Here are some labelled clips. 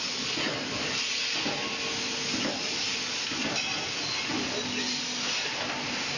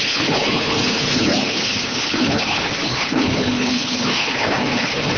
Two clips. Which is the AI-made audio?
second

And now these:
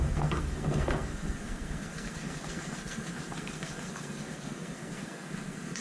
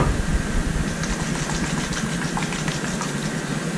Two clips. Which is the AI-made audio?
first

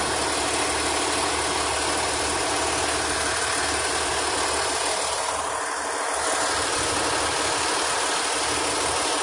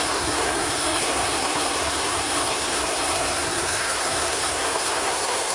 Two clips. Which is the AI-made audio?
second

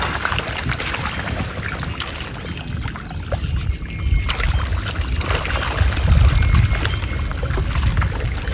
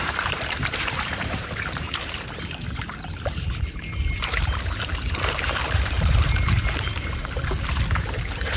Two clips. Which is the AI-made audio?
second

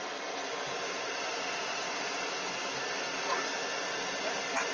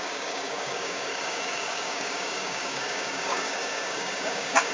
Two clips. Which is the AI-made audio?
second